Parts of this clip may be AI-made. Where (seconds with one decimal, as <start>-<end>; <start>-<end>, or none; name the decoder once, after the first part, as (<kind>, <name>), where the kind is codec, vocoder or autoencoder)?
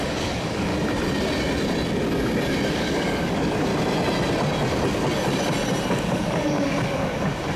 0.0-0.7 (codec, DAC); 2.7-3.7; 5.9-7.6